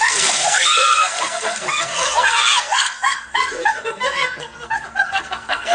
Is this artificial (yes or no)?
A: yes